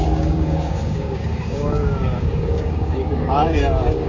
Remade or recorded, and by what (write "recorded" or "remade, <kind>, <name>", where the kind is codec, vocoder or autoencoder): remade, codec, DAC